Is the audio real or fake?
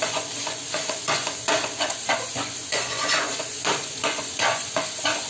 fake